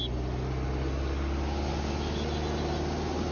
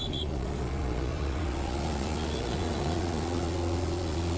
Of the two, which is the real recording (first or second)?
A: first